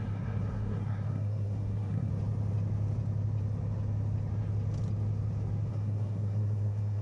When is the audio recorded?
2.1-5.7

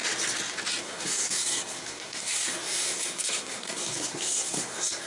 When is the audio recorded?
0.0-0.8